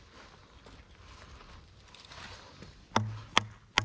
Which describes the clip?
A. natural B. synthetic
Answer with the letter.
A